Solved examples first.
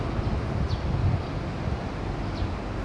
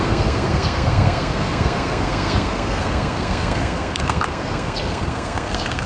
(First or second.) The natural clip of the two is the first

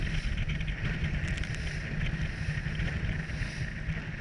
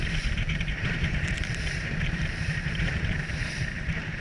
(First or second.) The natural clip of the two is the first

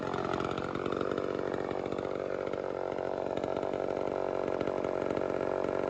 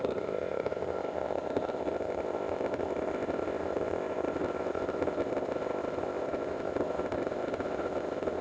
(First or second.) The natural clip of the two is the first